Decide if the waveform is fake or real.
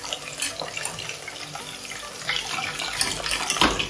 fake